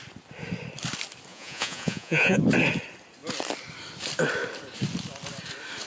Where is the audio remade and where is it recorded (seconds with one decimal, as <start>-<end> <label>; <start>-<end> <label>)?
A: 0.0-1.3 recorded; 1.3-2.4 remade; 2.4-5.9 recorded